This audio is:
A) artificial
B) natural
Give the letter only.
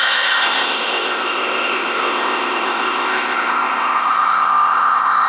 A